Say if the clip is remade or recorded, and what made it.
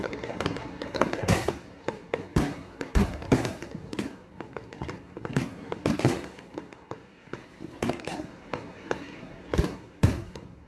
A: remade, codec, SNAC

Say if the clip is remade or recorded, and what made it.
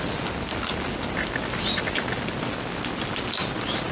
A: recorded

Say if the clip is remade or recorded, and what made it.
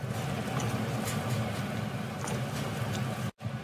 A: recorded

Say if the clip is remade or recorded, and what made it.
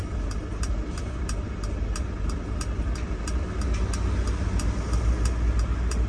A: recorded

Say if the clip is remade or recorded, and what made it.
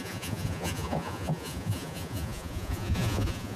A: remade, vocoder, Vocos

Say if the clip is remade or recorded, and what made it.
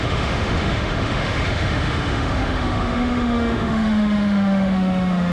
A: remade, autoencoder, DAC-VAE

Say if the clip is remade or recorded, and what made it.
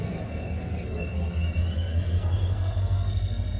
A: remade, codec, SNAC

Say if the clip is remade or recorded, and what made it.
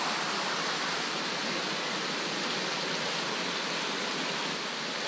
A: recorded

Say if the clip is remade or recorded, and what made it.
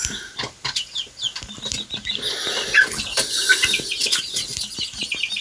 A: recorded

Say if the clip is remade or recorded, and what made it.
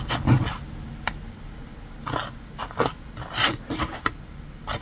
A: recorded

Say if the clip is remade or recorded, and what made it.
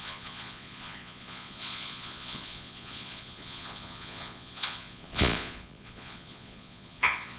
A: remade, vocoder, Vocos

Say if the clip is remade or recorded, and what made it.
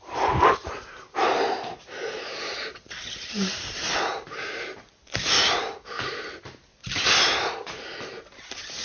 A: remade, vocoder, BigVGAN v2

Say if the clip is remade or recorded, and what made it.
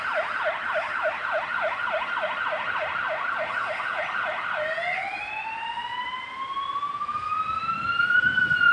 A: recorded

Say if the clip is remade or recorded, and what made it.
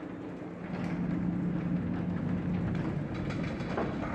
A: recorded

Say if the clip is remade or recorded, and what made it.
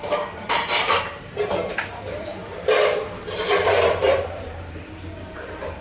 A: remade, vocoder, BigVGAN v2